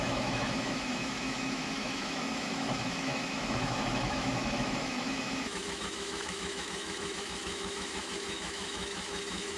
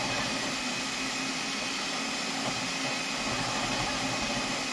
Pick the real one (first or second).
second